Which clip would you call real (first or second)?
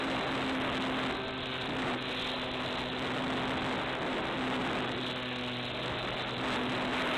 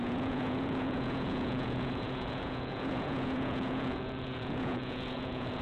first